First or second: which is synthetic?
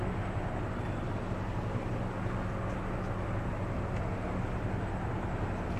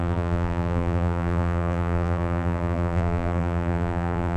second